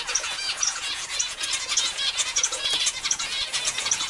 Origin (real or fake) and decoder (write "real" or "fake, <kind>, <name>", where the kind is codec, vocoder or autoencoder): fake, vocoder, Vocos